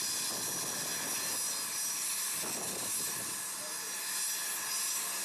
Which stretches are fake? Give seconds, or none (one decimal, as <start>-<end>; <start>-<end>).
none